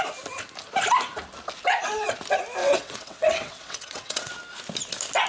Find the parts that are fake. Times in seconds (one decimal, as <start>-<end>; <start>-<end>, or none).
2.6-4.3